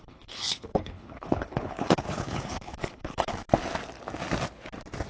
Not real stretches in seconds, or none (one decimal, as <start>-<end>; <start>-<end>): 0.0-3.3